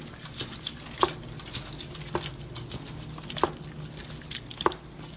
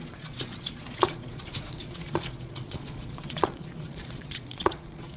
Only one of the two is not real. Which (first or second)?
second